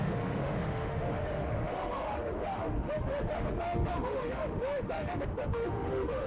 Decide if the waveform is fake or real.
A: fake